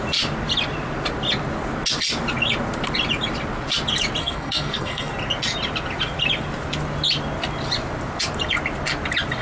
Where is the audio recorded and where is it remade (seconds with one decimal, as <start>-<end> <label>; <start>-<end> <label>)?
0.0-4.2 recorded; 4.2-5.1 remade; 5.1-9.4 recorded